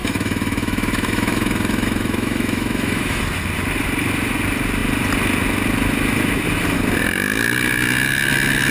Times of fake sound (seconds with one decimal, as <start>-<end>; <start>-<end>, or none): 0.0-3.2